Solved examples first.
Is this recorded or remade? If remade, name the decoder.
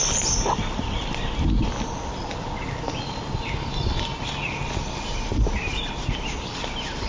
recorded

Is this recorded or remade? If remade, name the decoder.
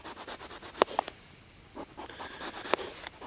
recorded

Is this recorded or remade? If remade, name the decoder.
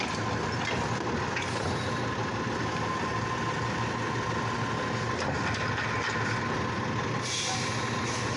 recorded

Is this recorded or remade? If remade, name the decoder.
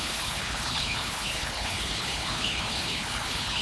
remade, codec, HILCodec